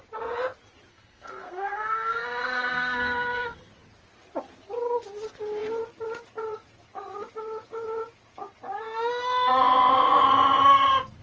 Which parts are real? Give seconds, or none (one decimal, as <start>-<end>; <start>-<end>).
0.0-0.9; 3.7-11.2